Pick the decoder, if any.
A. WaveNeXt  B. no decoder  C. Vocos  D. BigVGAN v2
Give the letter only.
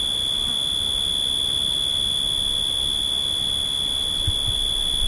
B